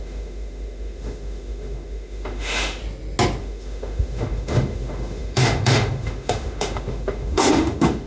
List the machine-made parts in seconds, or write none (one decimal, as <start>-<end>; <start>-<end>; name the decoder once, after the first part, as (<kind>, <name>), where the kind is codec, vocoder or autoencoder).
0.0-2.8 (autoencoder, DAC-VAE); 3.4-8.1